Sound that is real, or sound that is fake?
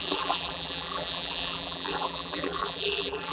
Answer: fake